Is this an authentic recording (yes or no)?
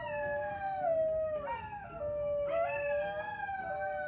yes